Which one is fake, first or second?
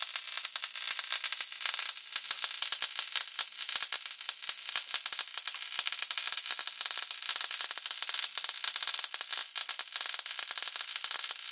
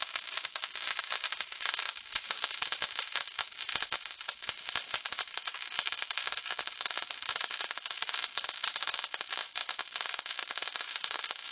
second